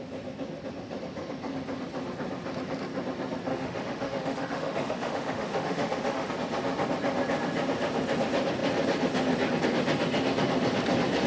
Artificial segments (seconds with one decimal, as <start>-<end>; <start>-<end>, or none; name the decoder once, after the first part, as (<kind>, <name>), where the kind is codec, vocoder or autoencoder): 3.5-6.3 (autoencoder, DAC-VAE)